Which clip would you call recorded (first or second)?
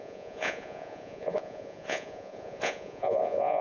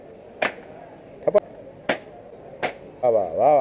second